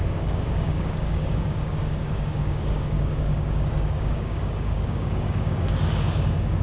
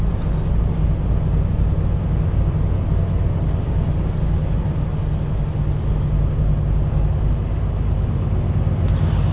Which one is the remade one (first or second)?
first